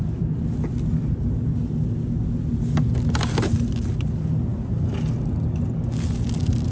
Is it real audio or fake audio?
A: real